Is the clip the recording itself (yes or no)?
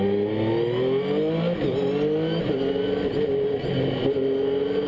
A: yes